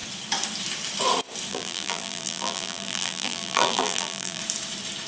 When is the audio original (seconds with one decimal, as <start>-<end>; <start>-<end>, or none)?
0.0-1.5; 4.4-5.1